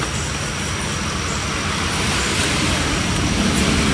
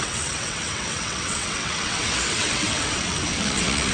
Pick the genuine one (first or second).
first